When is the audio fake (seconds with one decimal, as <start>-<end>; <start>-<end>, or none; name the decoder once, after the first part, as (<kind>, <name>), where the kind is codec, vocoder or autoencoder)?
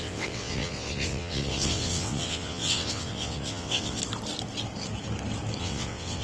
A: 0.0-4.0 (vocoder, WaveNeXt); 5.6-6.2